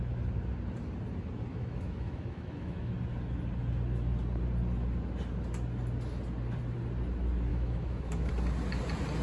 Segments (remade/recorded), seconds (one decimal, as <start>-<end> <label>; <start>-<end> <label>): 0.0-1.5 recorded; 1.5-2.9 remade; 2.9-7.5 recorded; 7.5-8.3 remade; 8.3-9.2 recorded